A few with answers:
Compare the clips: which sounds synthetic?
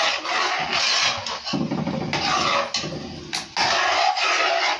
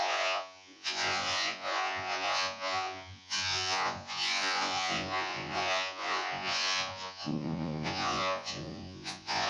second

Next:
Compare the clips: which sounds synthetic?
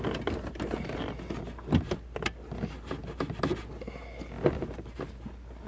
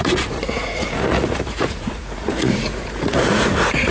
second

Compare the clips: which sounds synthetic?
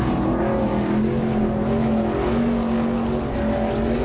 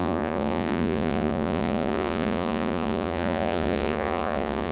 second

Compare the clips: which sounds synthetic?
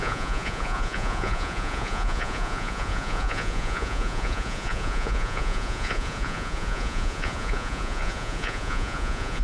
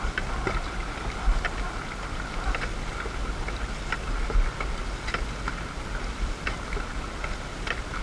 first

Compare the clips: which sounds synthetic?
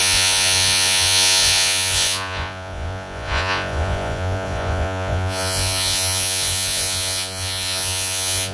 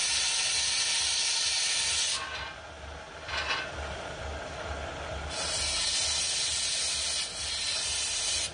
first